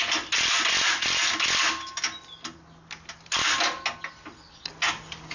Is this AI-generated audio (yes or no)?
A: no